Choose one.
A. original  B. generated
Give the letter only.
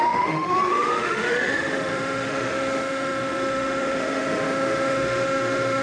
B